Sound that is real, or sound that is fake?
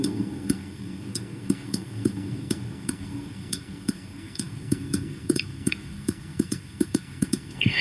fake